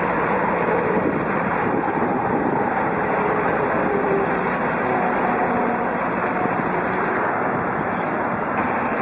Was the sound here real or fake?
real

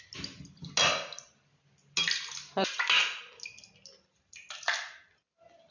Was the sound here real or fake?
real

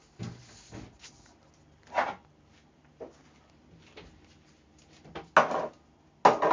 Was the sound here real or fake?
real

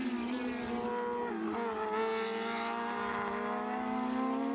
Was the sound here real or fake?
real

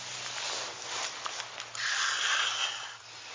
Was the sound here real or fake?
real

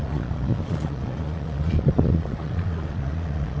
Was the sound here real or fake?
fake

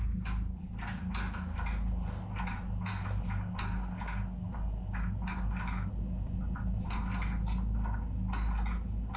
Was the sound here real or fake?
real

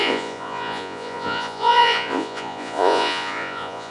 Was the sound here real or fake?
fake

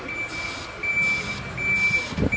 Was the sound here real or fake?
real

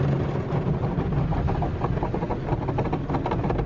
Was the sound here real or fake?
real